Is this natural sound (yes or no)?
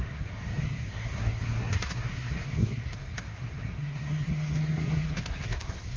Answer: no